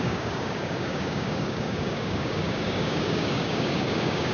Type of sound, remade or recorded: remade